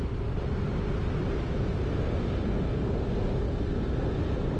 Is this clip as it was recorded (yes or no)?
yes